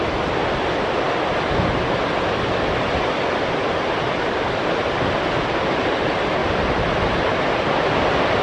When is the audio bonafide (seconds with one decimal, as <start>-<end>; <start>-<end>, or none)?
0.0-6.4; 7.5-8.4